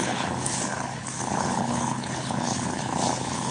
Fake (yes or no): yes